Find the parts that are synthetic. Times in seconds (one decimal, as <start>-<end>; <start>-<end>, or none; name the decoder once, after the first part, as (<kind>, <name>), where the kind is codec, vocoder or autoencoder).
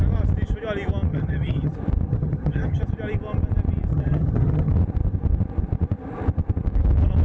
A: 1.1-1.7 (vocoder, HiFi-GAN); 2.1-2.8; 3.9-4.7